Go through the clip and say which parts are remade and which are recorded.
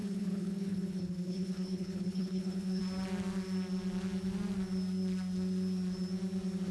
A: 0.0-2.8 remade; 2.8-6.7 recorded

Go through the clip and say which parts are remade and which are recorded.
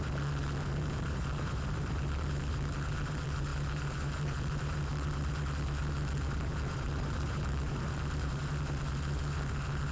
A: 0.0-9.9 remade